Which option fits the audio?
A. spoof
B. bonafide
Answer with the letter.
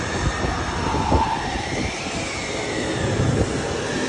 B